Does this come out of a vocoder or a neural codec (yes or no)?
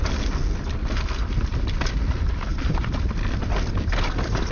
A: no